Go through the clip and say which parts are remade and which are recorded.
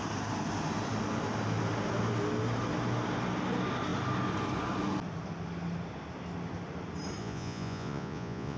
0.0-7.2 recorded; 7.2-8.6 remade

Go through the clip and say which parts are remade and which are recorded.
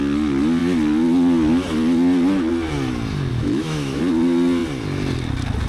0.0-3.3 recorded; 3.3-4.0 remade; 4.0-5.7 recorded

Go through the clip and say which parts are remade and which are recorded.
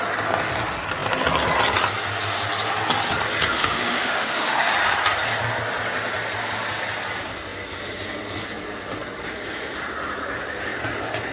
0.0-3.5 recorded; 3.5-4.7 remade; 4.7-11.3 recorded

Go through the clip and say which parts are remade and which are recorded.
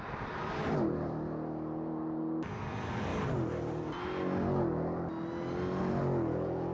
0.0-6.7 recorded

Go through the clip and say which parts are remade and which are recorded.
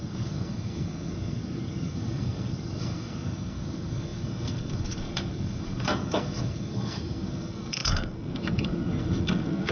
0.0-9.7 remade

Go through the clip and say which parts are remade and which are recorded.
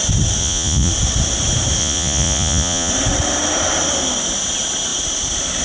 0.0-0.4 recorded; 0.4-0.9 remade; 0.9-1.8 recorded; 1.8-2.9 remade; 2.9-5.6 recorded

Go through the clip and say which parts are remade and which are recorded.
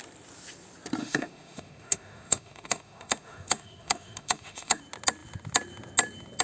0.0-1.0 recorded; 1.0-4.8 remade; 4.8-6.4 recorded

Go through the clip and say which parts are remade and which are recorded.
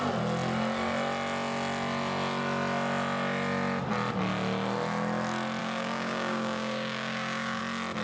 0.0-5.6 recorded; 5.6-7.6 remade; 7.6-8.0 recorded